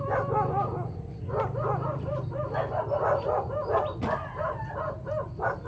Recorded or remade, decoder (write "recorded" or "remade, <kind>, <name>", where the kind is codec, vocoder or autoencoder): recorded